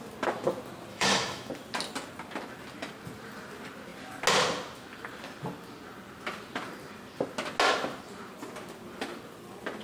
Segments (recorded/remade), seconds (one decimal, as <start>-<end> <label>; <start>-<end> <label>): 0.0-0.9 recorded; 0.9-1.5 remade; 1.5-9.8 recorded